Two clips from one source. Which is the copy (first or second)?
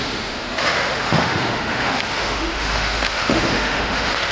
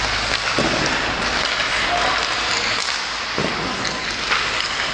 first